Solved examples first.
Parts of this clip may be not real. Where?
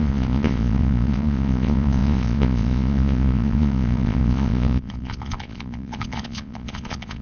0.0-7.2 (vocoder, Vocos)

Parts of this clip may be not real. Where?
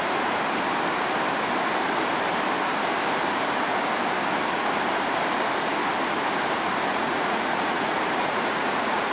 6.9-9.1 (vocoder, Vocos)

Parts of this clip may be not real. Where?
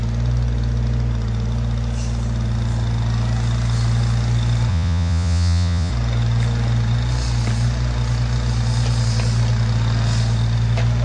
4.7-5.9 (vocoder, Vocos)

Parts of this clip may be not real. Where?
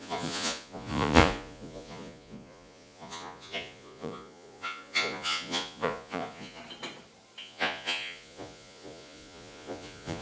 0.0-6.6 (vocoder, Vocos); 7.4-10.2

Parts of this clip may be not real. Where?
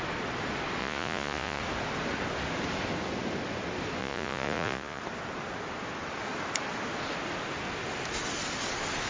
0.8-1.6 (vocoder, Vocos); 4.0-5.0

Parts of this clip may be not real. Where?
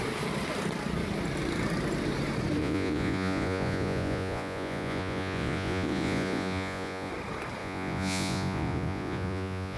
2.6-7.1 (vocoder, Vocos); 7.6-9.8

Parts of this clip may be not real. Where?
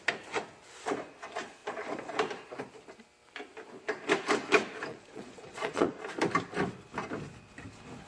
4.9-6.0 (vocoder, Vocos)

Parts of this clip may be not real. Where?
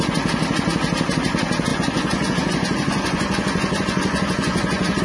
1.7-5.0 (vocoder, Vocos)